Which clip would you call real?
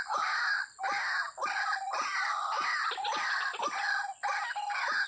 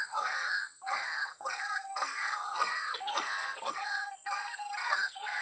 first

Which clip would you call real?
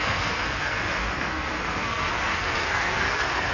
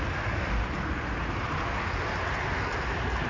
second